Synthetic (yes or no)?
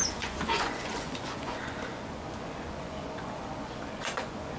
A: yes